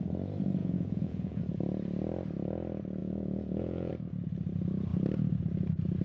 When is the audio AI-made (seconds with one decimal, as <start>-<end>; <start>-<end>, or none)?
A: 0.6-1.4; 3.0-3.9

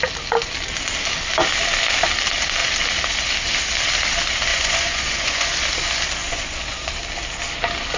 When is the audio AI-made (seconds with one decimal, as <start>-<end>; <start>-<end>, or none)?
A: 4.5-5.5; 6.2-6.9

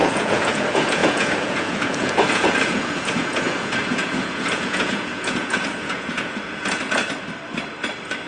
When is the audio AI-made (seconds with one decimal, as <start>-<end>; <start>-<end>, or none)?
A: 0.0-7.0